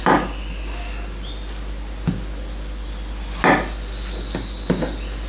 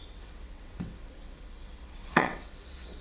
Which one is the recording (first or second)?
first